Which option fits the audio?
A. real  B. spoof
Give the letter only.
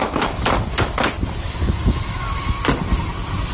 B